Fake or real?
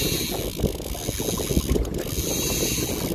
real